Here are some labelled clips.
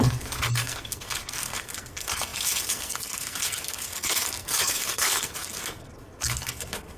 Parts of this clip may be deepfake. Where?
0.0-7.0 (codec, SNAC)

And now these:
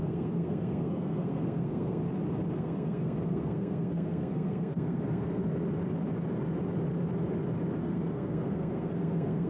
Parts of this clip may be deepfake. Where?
0.0-2.0 (codec, SNAC); 2.6-5.4; 7.8-9.5

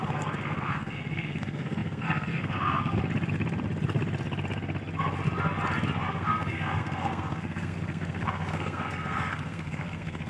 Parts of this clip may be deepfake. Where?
0.0-3.0 (codec, SNAC); 6.1-10.3

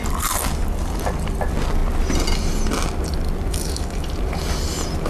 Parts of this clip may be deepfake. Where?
none

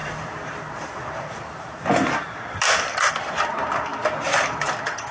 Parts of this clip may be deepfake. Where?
none

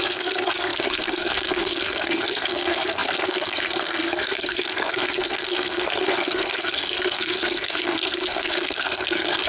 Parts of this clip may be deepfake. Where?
0.0-9.5 (codec, SNAC)